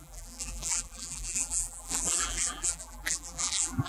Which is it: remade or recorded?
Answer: remade